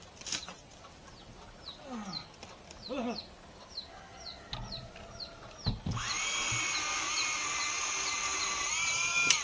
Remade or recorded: recorded